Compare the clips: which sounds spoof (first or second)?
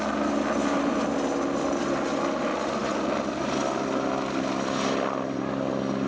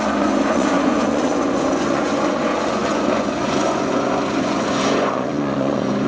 second